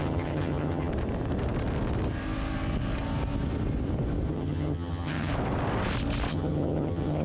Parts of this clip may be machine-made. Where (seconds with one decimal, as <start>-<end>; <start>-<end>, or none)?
0.0-0.9; 4.3-5.3; 6.3-7.2